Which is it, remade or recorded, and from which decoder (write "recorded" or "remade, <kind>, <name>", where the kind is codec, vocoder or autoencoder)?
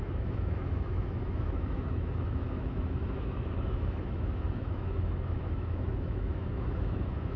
remade, autoencoder, DAC-VAE